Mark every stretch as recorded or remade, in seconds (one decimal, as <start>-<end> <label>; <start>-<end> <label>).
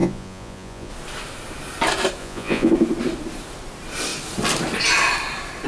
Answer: 0.0-0.9 remade; 0.9-2.2 recorded; 2.2-2.7 remade; 2.7-5.7 recorded